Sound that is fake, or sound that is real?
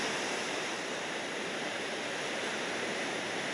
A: fake